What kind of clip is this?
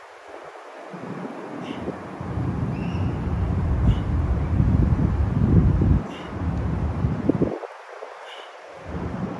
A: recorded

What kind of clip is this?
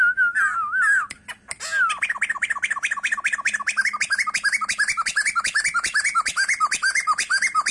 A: recorded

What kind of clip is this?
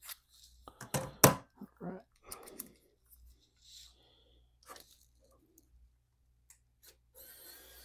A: recorded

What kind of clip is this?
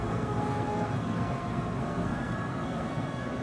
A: remade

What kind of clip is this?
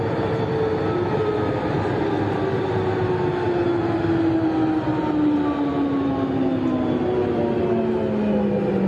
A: recorded